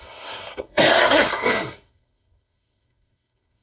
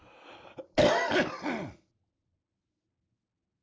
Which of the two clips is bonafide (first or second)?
second